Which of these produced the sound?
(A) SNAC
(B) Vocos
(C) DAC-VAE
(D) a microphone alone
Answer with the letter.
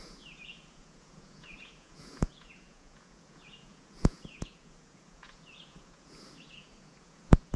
B